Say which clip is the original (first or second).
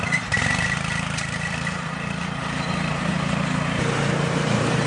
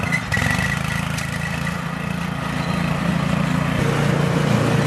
second